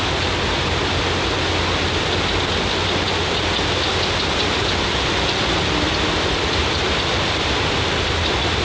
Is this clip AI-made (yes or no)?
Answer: no